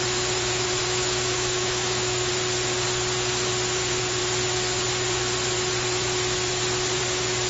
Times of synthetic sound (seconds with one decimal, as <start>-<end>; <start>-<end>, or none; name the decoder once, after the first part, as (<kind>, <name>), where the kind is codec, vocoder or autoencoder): 0.8-2.3 (autoencoder, DAC-VAE)